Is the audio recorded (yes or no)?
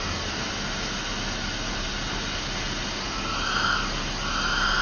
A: yes